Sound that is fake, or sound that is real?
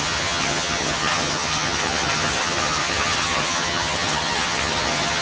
fake